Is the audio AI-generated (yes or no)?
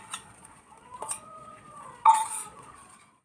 yes